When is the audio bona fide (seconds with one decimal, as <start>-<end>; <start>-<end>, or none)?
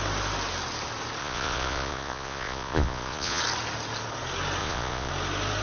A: 0.0-1.2; 3.4-4.6; 5.1-5.6